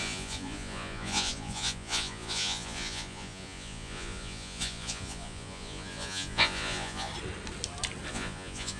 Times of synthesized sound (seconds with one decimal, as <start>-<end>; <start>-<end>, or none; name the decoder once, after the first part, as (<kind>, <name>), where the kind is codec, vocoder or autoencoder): 0.0-7.1 (vocoder, Vocos); 8.1-8.8